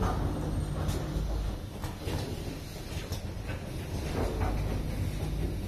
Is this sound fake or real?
real